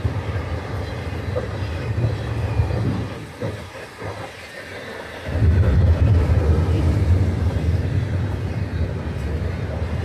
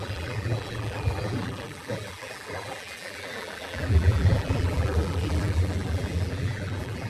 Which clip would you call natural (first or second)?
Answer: first